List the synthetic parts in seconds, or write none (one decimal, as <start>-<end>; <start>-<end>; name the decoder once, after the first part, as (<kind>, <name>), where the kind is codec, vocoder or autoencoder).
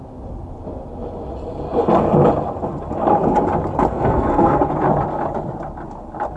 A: 3.9-4.6 (codec, SNAC)